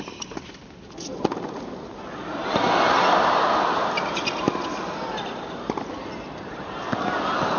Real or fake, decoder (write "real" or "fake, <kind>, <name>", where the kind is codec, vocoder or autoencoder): real